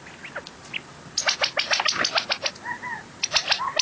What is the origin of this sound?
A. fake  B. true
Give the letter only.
B